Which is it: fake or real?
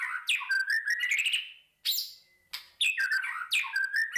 real